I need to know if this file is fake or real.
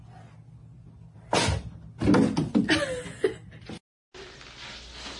real